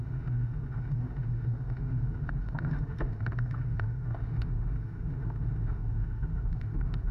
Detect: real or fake fake